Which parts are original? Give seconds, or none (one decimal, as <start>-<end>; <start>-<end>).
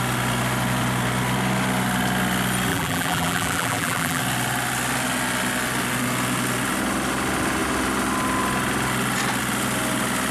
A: 0.0-2.7; 4.2-10.3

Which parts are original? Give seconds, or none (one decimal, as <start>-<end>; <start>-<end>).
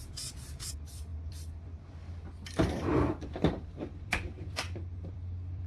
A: none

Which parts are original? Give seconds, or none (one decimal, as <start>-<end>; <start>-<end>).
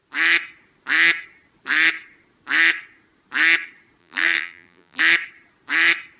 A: 0.0-4.0; 5.0-6.2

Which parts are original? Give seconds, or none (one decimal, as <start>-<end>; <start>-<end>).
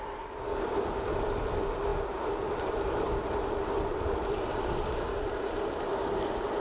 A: 0.0-6.6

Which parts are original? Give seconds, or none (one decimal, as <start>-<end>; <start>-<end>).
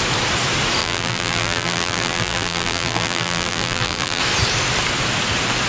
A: 0.0-0.8; 4.2-5.7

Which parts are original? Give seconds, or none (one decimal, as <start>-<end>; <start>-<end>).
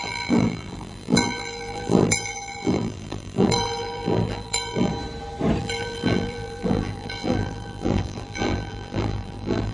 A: 4.9-5.6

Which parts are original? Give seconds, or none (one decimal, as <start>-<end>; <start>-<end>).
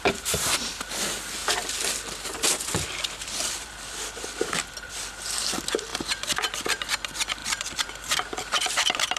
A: 0.0-1.4; 5.1-5.9; 6.9-7.4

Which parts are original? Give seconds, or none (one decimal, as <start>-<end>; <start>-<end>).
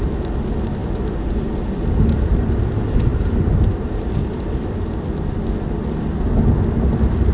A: 0.0-0.8; 2.6-7.3